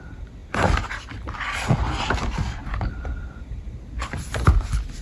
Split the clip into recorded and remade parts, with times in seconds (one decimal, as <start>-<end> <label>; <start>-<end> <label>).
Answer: 0.0-2.6 recorded; 2.6-4.6 remade; 4.6-5.0 recorded